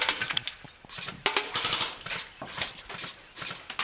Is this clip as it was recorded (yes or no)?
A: yes